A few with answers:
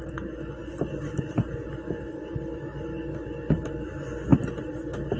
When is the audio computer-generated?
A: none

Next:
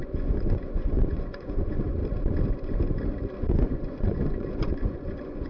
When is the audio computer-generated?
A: 0.0-2.0 (vocoder, Vocos); 3.5-5.5

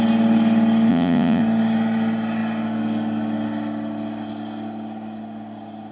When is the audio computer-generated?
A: 0.9-1.4 (vocoder, Vocos)